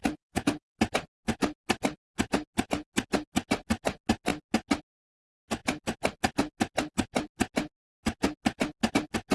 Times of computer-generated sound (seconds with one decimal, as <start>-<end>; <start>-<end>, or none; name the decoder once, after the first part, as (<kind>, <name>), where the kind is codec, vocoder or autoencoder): none

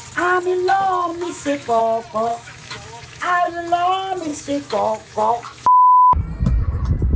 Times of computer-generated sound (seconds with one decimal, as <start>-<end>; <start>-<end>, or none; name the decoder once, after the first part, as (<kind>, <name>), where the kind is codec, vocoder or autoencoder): 1.1-1.8 (autoencoder, DAC-VAE); 2.3-3.6; 4.3-6.2

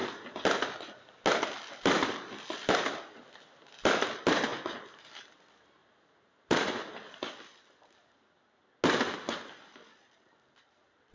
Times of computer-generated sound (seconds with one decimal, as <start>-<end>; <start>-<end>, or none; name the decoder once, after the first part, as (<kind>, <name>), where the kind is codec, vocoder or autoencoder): 5.8-6.9 (vocoder, Vocos)

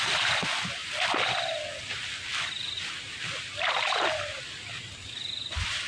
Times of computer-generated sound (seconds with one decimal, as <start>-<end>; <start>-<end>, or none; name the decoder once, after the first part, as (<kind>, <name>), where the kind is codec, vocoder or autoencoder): none

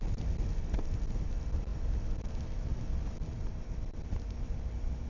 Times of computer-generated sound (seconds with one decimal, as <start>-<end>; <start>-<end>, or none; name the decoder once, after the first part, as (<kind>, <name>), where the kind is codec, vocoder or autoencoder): none

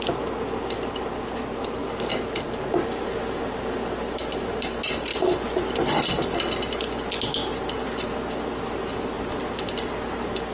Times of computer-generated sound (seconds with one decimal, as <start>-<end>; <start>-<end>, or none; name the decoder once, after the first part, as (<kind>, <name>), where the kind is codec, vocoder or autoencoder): 5.1-5.9 (vocoder, BigVGAN v2); 7.4-8.1

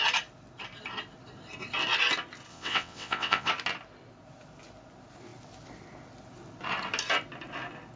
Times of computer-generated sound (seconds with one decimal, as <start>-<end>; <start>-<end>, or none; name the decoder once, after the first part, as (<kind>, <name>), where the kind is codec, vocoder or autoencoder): 2.5-3.5 (vocoder, WaveNeXt)